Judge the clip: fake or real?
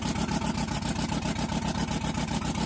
real